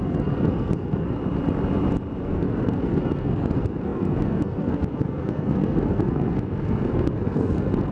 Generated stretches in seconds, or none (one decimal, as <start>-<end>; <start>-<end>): 0.0-1.2; 2.2-7.9